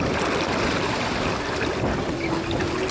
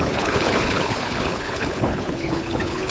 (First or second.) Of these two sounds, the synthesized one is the second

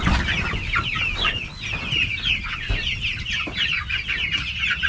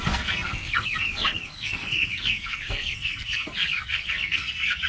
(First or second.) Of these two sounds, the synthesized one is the second